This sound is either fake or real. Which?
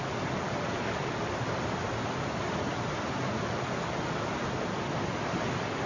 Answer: real